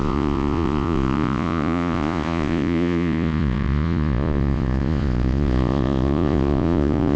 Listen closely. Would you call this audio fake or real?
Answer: fake